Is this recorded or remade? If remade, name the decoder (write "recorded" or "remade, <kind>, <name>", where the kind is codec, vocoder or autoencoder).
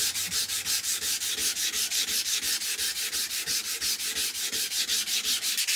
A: remade, vocoder, BigVGAN v2